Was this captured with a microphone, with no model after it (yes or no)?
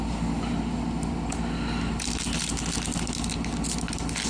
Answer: yes